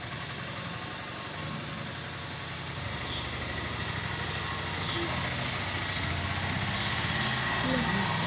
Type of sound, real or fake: real